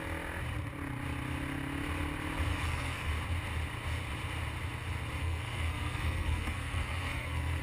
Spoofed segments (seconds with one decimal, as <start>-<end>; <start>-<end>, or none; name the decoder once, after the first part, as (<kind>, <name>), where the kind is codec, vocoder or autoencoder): 2.5-3.1 (codec, SNAC); 5.2-7.6

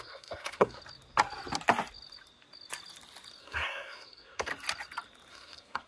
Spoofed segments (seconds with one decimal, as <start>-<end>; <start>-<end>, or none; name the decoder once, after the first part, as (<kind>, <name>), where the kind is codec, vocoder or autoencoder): 0.0-0.8 (codec, SNAC); 3.4-4.5; 5.3-5.9

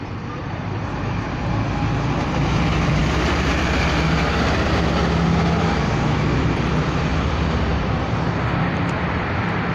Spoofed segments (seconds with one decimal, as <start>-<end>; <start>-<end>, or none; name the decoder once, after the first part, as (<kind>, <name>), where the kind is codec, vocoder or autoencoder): 0.0-3.0 (vocoder, BigVGAN v2); 6.4-7.1; 7.7-9.7

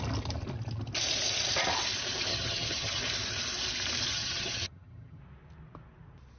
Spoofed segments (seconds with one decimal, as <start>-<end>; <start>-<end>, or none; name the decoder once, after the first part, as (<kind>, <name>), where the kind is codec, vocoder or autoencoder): 2.3-3.0 (vocoder, HiFi-GAN); 4.1-5.2